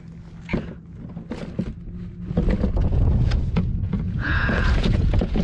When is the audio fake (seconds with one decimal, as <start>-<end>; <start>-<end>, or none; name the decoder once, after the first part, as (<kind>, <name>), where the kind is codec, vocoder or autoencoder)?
2.8-5.4 (vocoder, Vocos)